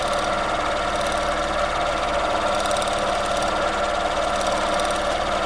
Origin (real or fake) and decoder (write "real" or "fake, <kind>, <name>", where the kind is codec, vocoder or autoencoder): real